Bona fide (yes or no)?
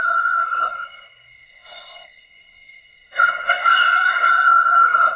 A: no